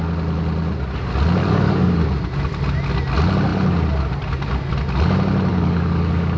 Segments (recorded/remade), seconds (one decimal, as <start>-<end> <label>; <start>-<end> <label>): 0.0-1.4 recorded; 1.4-2.0 remade; 2.0-5.5 recorded; 5.5-6.4 remade